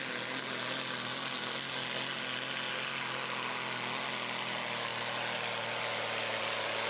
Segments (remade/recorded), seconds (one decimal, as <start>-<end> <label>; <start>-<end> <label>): 0.0-6.9 recorded